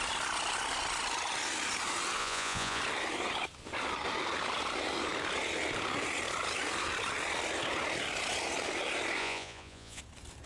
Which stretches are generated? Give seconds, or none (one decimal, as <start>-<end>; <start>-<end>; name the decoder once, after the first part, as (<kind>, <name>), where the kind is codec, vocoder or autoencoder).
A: 2.2-2.8 (vocoder, Vocos); 9.2-10.0